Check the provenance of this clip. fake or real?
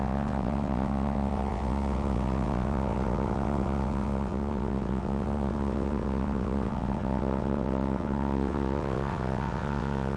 fake